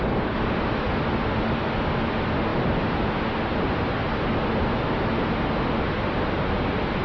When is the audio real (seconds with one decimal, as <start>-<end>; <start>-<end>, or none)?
0.0-7.0